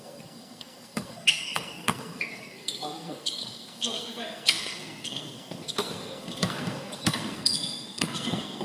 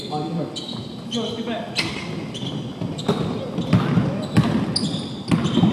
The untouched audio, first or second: second